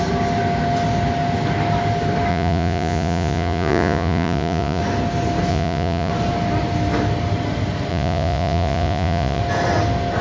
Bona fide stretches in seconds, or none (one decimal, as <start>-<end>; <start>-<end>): 0.0-2.3; 4.8-5.5; 6.1-7.9; 9.4-10.2